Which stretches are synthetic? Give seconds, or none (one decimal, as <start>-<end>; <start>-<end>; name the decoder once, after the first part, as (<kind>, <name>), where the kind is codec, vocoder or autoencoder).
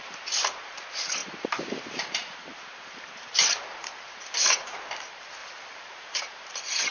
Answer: 0.0-6.9 (vocoder, BigVGAN v2)